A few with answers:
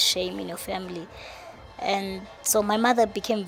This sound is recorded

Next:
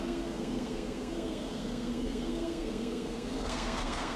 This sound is remade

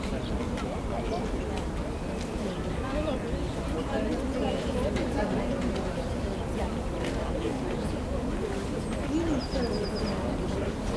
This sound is recorded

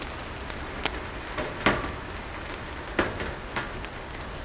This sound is recorded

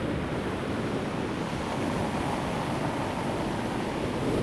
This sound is recorded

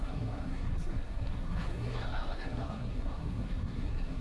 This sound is remade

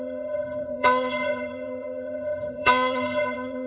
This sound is remade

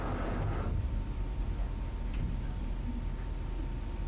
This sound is recorded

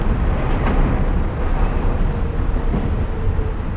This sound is remade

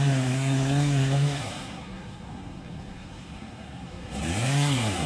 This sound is remade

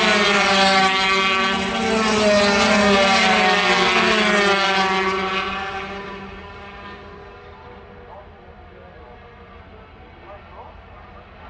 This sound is recorded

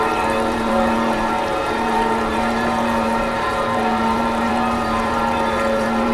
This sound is remade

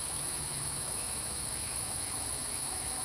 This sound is remade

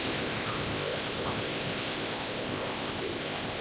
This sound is remade